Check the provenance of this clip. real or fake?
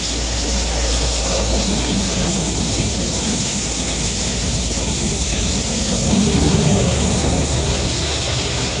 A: fake